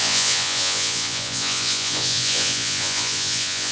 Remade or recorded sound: remade